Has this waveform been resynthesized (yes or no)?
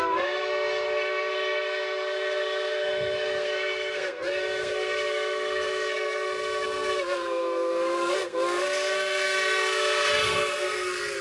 yes